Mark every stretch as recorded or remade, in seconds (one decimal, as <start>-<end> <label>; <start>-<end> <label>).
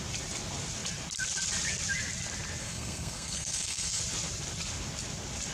0.0-2.6 recorded; 2.6-4.0 remade; 4.0-5.5 recorded